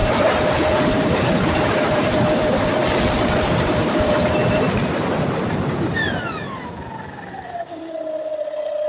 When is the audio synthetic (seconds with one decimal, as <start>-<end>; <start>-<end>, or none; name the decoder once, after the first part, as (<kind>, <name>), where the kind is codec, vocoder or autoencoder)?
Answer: 0.0-2.8 (vocoder, BigVGAN v2); 3.4-8.9